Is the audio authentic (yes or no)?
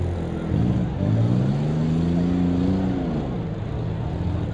yes